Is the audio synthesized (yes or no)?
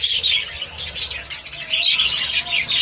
no